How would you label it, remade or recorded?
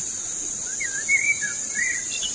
recorded